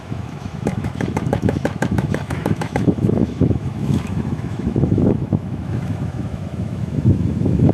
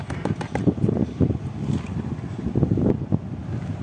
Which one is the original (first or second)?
second